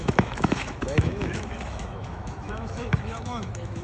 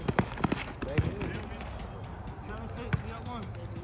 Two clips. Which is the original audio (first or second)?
second